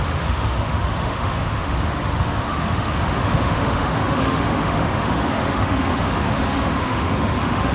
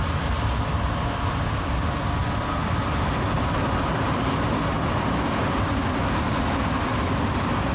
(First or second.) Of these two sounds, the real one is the second